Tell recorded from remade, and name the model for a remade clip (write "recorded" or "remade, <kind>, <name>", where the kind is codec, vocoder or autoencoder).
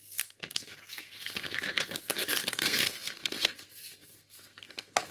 remade, codec, SNAC